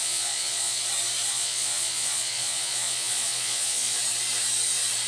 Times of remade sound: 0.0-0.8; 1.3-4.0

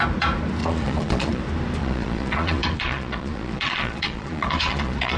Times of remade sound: 0.6-1.4; 1.8-5.2

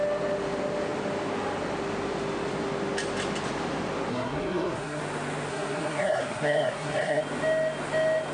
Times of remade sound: 4.1-5.0; 5.5-7.2

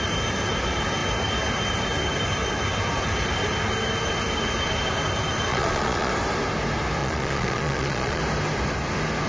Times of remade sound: 5.5-6.1; 7.0-8.2